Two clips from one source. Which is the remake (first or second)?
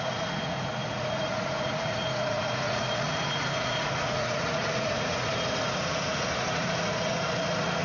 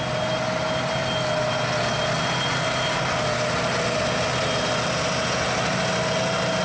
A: first